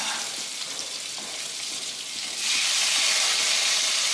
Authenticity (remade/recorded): recorded